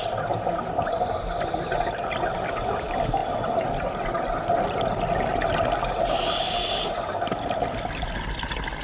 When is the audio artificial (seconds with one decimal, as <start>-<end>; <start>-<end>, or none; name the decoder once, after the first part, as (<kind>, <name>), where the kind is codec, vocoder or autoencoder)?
none